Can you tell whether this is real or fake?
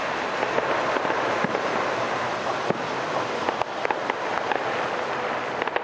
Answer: real